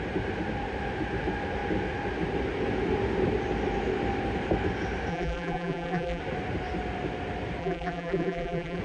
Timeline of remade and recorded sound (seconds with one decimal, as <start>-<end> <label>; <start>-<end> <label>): 0.0-5.1 recorded; 5.1-6.2 remade; 6.2-7.6 recorded; 7.6-8.8 remade